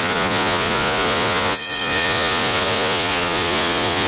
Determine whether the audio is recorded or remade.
remade